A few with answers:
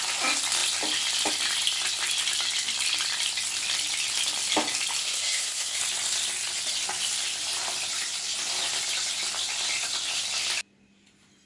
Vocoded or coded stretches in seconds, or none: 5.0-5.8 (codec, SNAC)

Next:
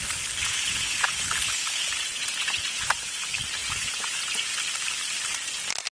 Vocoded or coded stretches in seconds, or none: 0.4-3.2 (vocoder, Vocos); 3.6-4.5

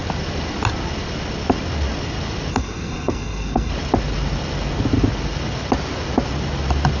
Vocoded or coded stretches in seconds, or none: 2.5-3.7 (codec, SNAC)

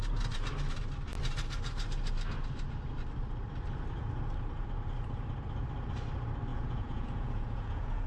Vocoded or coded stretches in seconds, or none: 6.5-8.1 (vocoder, Vocos)

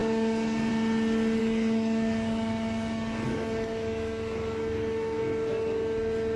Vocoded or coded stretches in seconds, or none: 0.0-0.7 (codec, DAC); 1.4-5.2

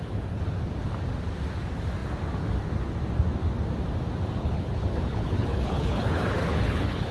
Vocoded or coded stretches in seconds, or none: 4.4-7.1 (codec, HILCodec)

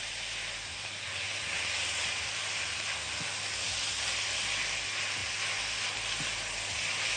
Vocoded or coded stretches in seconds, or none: none